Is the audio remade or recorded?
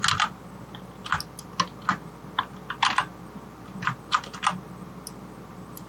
recorded